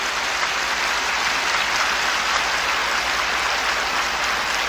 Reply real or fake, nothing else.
real